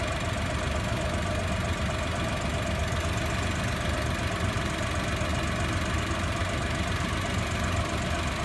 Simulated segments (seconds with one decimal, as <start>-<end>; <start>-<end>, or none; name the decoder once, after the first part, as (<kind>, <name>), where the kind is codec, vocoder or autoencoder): none